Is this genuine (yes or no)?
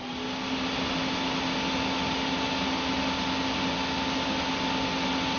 yes